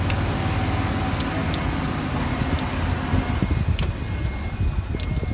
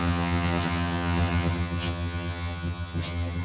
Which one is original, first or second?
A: first